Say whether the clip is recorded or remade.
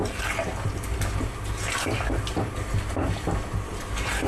recorded